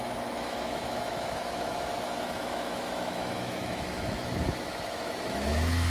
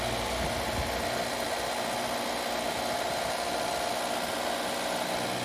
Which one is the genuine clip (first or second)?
second